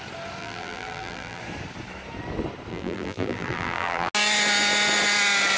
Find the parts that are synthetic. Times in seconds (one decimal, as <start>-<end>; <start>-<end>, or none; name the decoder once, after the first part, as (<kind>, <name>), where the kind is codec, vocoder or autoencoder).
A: 0.4-1.4 (vocoder, BigVGAN v2); 2.7-4.1